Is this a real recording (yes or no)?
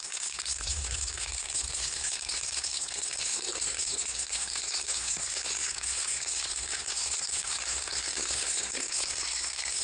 no